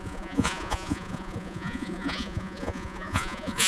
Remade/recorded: remade